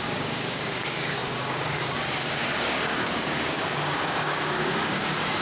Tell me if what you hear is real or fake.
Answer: fake